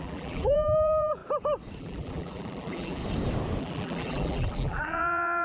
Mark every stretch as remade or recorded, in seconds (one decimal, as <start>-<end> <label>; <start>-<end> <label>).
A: 0.0-1.2 remade; 1.2-1.8 recorded; 1.8-3.0 remade; 3.0-3.6 recorded; 3.6-5.4 remade